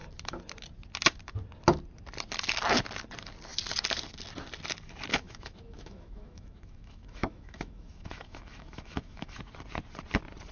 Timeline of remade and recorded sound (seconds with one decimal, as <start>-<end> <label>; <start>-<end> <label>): 0.0-5.1 recorded; 5.1-9.4 remade; 9.4-10.5 recorded